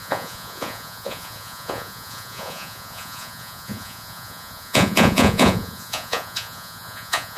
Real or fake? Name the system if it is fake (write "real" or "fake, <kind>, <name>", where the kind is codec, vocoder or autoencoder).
fake, vocoder, Vocos